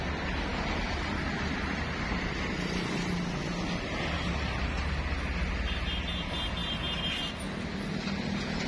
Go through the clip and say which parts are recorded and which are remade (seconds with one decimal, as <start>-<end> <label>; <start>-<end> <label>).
0.0-0.5 recorded; 0.5-3.1 remade; 3.1-8.7 recorded